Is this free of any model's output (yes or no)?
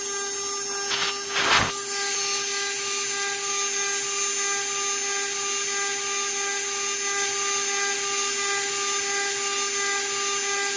yes